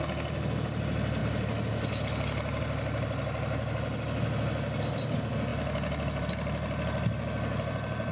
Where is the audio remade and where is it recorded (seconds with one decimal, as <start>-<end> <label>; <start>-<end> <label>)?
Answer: 0.0-8.1 recorded